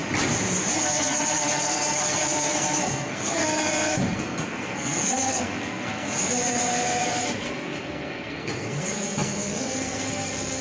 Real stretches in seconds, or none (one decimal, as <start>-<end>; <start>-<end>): 0.0-0.8